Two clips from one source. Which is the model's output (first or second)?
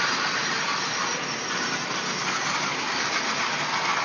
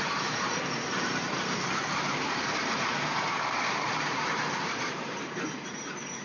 second